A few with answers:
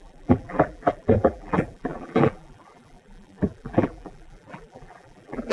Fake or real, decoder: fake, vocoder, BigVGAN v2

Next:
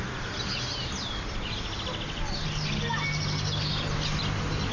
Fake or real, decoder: real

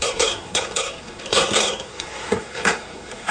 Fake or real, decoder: fake, codec, SNAC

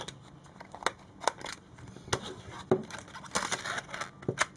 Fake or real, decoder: real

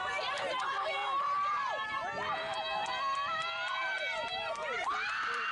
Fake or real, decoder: fake, vocoder, BigVGAN v2